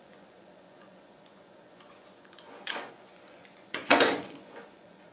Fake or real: fake